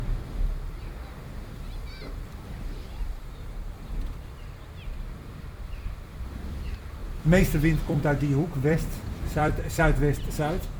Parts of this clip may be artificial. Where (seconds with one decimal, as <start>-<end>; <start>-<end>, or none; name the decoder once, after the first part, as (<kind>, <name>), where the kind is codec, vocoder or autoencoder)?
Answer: 2.0-6.4 (vocoder, BigVGAN v2); 7.0-10.3